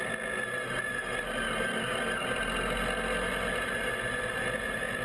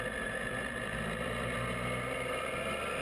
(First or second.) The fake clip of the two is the second